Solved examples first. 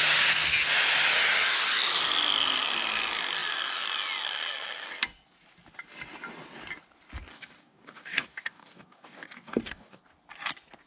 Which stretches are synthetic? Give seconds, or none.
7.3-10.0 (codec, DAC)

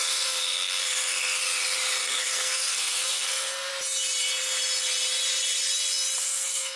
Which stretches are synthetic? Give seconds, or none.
0.0-1.4 (codec, SNAC); 2.0-3.7; 6.2-6.8